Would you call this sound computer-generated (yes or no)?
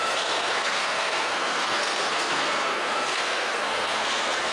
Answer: yes